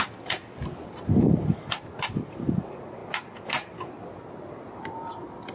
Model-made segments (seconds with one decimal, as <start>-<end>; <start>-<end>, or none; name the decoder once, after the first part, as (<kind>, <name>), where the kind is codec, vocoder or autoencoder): none